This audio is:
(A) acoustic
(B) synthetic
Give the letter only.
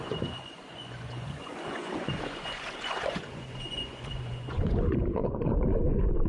B